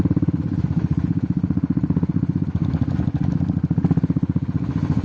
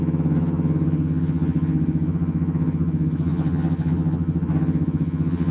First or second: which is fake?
second